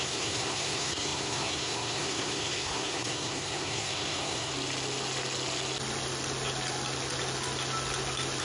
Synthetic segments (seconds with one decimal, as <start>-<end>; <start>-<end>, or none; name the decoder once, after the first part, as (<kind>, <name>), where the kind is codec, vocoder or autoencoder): 0.0-4.5 (codec, SNAC)